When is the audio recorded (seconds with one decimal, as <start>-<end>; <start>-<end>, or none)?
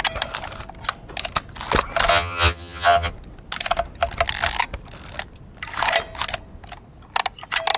0.0-2.1; 3.1-7.8